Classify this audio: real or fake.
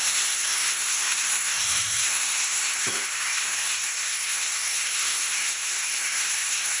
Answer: fake